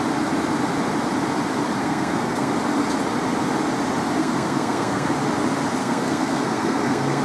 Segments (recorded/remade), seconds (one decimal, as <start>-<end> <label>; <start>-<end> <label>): 0.0-1.8 recorded; 1.8-2.5 remade; 2.5-4.2 recorded; 4.2-5.1 remade; 5.1-5.8 recorded; 5.8-7.2 remade